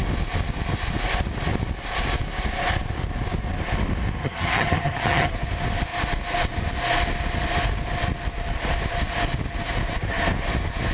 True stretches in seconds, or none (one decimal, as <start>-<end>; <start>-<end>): 0.0-4.2; 5.3-10.9